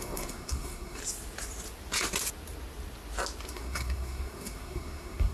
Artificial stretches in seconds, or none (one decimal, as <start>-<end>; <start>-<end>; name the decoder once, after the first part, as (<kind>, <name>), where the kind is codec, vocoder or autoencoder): 0.0-1.0 (codec, SNAC); 3.5-5.3